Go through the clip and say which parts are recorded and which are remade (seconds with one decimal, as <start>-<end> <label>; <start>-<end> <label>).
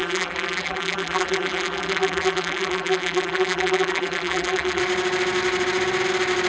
0.0-4.8 remade; 4.8-6.5 recorded